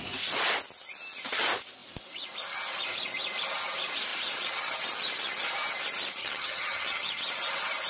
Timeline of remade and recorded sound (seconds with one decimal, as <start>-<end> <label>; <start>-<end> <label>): 0.0-6.2 recorded; 6.2-7.2 remade; 7.2-7.9 recorded